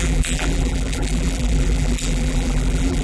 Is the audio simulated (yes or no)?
yes